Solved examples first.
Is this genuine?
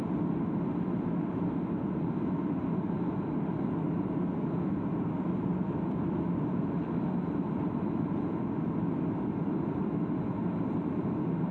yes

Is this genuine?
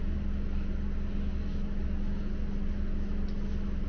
yes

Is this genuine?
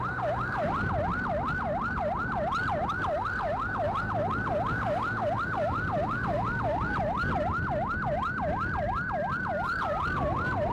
yes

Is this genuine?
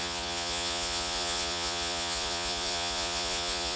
no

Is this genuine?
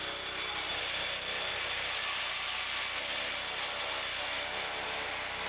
yes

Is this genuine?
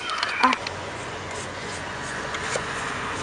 no